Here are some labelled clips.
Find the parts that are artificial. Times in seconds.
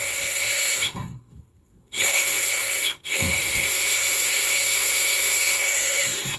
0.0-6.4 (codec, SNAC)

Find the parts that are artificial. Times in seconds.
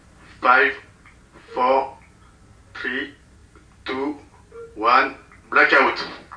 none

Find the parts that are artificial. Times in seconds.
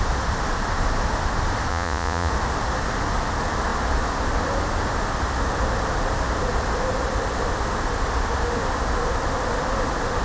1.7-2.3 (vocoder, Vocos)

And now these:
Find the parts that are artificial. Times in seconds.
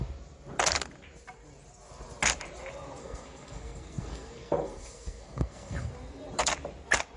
3.0-5.9 (codec, SNAC)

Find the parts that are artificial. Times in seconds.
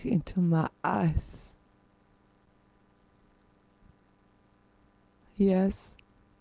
none